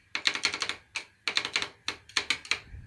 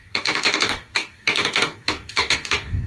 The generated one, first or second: second